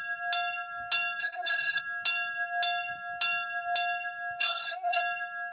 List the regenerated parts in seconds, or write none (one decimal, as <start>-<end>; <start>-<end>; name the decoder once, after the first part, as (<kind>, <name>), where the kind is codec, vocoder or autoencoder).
1.2-1.8 (codec, SNAC); 4.4-5.0